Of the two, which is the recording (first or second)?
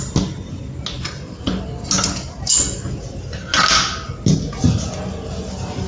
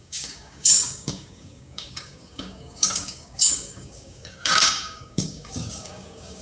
first